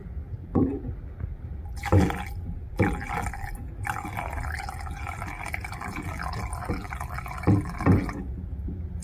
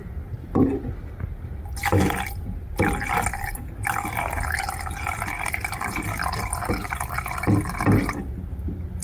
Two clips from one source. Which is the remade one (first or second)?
first